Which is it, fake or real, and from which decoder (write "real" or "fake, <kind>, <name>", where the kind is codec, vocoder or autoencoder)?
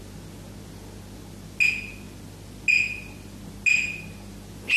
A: real